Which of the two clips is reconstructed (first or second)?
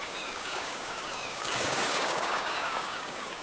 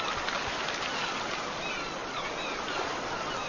first